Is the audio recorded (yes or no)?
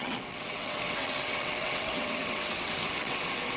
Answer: no